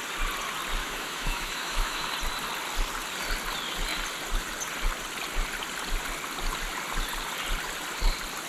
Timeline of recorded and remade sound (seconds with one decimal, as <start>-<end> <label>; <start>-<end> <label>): 0.0-0.8 recorded; 0.8-2.1 remade; 2.1-8.5 recorded